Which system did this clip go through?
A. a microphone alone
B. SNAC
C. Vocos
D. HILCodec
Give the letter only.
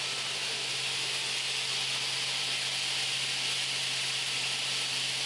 A